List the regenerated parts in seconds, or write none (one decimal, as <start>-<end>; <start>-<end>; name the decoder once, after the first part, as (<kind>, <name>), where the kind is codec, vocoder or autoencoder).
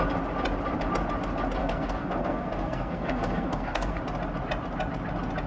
1.6-4.0 (codec, SNAC)